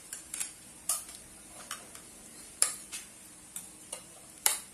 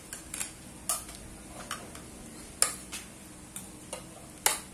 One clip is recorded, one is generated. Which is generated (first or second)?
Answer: first